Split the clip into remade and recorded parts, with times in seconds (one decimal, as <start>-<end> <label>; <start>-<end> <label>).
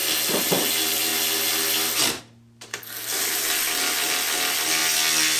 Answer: 0.0-2.7 recorded; 2.7-3.2 remade; 3.2-5.4 recorded